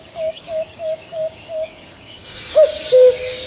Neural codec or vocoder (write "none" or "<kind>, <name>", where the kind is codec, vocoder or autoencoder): codec, DAC